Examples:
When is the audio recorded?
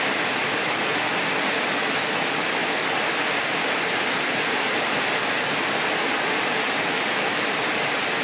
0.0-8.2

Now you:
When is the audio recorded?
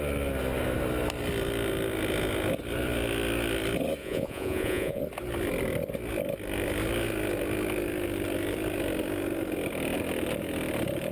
0.0-4.0; 5.0-11.1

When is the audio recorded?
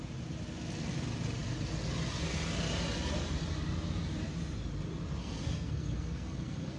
0.0-5.2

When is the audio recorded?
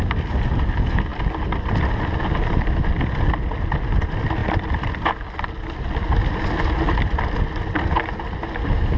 0.0-9.0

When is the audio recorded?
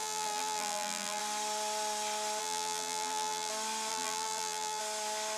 1.2-2.4; 3.5-3.9; 4.8-5.4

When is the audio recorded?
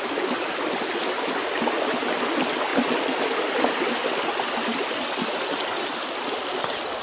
0.0-1.4; 2.1-7.0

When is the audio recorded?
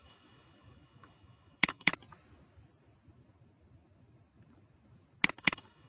1.9-5.4